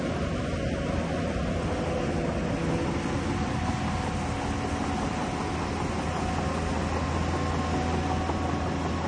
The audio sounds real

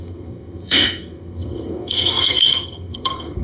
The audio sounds fake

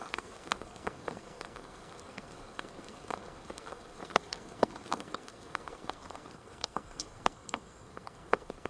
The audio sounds fake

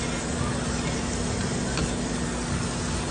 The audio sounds real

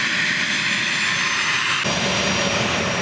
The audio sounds real